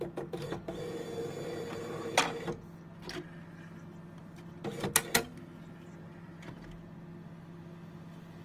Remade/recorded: recorded